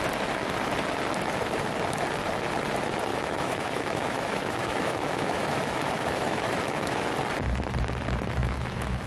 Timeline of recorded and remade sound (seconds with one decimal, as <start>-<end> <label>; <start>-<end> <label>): 0.0-3.1 recorded; 3.1-7.1 remade; 7.1-8.4 recorded; 8.4-9.1 remade